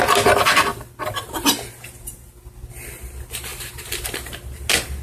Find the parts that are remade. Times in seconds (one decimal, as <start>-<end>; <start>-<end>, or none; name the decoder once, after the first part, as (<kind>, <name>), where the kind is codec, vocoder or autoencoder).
none